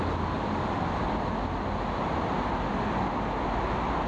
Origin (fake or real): real